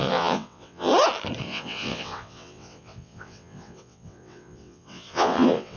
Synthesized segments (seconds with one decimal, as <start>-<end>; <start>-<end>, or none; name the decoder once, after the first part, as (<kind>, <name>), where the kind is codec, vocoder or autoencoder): 0.0-0.9 (vocoder, WaveNeXt); 1.4-5.8